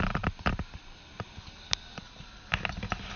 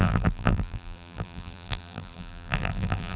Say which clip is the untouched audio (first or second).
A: first